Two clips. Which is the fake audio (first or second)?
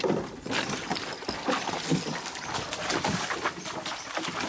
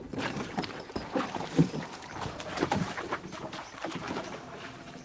second